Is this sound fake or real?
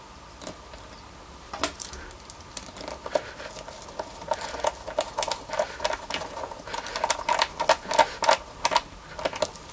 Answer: real